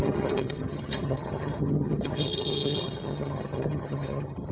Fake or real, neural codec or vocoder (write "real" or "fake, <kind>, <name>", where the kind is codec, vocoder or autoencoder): fake, vocoder, HiFi-GAN